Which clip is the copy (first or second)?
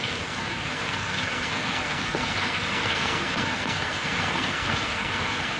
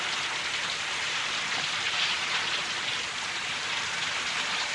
first